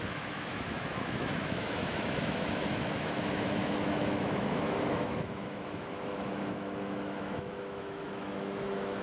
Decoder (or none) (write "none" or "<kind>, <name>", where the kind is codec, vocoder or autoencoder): autoencoder, DAC-VAE